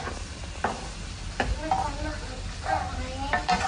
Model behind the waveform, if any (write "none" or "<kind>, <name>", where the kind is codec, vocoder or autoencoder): none